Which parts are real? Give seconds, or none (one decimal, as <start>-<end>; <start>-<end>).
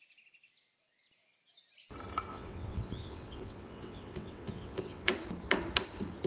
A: 0.0-2.3; 5.1-6.3